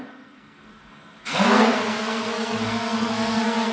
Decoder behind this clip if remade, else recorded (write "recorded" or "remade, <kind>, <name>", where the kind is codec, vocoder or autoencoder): remade, codec, SNAC